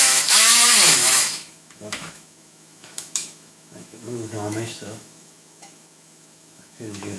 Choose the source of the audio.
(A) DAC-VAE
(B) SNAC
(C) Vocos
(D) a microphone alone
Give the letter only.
A